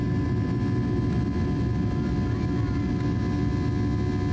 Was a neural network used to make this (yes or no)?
no